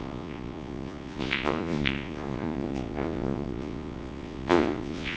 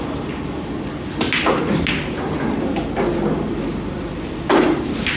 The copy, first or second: first